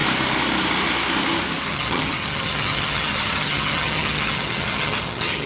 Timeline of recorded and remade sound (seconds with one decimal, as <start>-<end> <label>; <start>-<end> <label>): 0.0-1.7 recorded; 1.7-5.5 remade